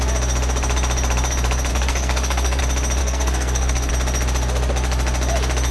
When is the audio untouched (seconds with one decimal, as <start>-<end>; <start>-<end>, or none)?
0.0-1.7; 2.6-3.0; 3.9-5.7